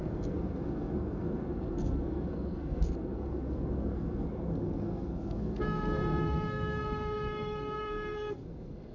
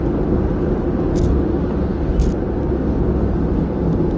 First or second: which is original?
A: second